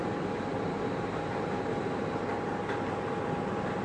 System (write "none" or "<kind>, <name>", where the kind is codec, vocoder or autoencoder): none